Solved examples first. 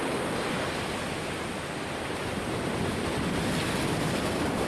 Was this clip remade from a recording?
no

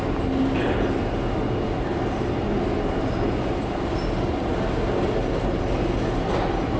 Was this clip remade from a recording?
no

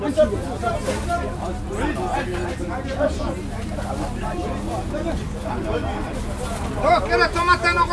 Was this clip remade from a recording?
no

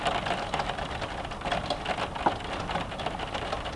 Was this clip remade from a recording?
no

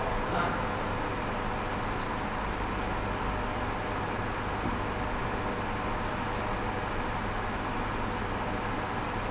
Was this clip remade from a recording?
no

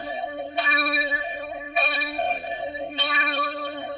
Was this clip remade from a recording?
yes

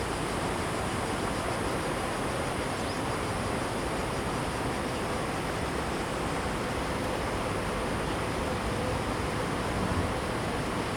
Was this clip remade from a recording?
no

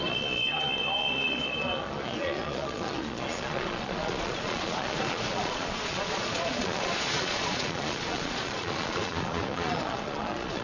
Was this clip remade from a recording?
yes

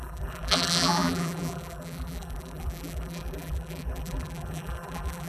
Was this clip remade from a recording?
yes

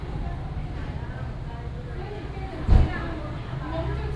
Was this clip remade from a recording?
no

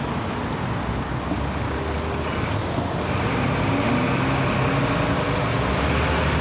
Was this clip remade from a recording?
no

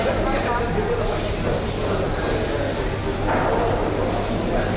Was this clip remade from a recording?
no